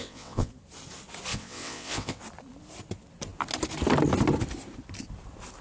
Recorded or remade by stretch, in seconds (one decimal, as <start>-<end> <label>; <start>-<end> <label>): 0.0-0.5 remade; 0.5-1.3 recorded; 1.3-2.2 remade; 2.2-5.6 recorded